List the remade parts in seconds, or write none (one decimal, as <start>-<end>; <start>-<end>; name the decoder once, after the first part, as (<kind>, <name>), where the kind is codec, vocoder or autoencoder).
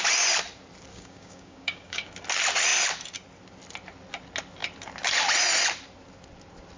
0.9-2.1 (codec, DAC)